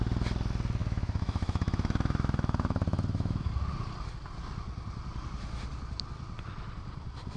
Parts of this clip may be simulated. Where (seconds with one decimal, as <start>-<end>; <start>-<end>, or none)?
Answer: 0.8-3.5